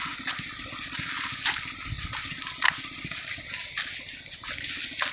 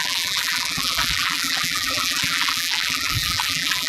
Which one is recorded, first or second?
first